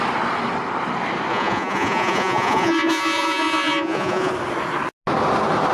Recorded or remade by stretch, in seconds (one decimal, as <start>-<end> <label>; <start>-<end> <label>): 0.0-1.3 recorded; 1.3-4.3 remade; 4.3-5.7 recorded

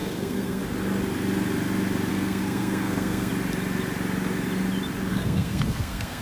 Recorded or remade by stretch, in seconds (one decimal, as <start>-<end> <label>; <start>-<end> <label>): 0.0-0.6 remade; 0.6-2.1 recorded; 2.1-3.3 remade; 3.3-5.1 recorded; 5.1-6.2 remade

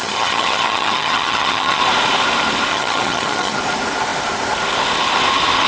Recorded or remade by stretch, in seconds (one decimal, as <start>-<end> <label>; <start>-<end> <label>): 0.0-1.8 remade; 1.8-2.7 recorded; 2.7-3.6 remade; 3.6-5.7 recorded

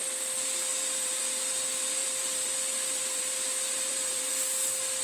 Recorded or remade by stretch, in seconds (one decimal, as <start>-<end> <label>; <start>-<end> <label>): 0.0-0.7 recorded; 0.7-1.2 remade; 1.2-2.0 recorded; 2.0-4.3 remade; 4.3-5.0 recorded

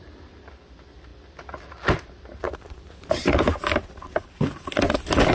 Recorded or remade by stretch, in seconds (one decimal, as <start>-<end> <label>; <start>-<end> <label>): 0.0-5.3 recorded